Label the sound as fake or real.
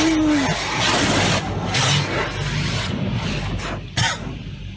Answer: real